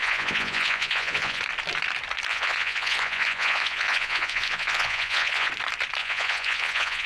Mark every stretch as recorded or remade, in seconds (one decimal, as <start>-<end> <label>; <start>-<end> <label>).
0.0-1.4 remade; 1.4-2.3 recorded; 2.3-5.5 remade; 5.5-6.0 recorded; 6.0-7.1 remade